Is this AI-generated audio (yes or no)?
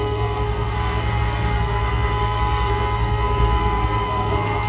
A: yes